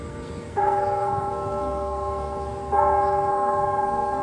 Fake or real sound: fake